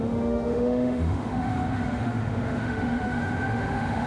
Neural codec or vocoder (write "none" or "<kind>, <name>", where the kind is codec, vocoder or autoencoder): autoencoder, DAC-VAE